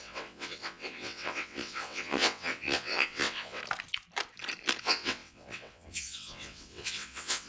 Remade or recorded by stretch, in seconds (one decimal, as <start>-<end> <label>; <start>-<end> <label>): 0.0-3.6 remade; 3.6-4.8 recorded; 4.8-7.5 remade

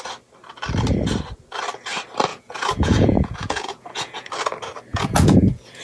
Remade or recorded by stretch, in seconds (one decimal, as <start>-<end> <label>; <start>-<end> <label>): 0.0-2.3 recorded; 2.3-4.3 remade; 4.3-4.9 recorded; 4.9-5.8 remade

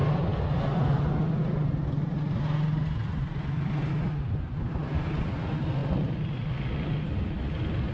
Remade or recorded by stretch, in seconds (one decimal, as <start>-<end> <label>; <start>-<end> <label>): 0.0-7.9 recorded